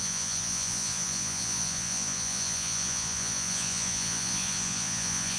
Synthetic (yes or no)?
yes